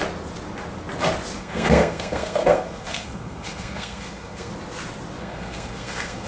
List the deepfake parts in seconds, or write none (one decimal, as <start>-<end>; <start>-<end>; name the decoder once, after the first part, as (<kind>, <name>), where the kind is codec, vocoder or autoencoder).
1.4-4.5 (codec, SNAC); 5.2-6.3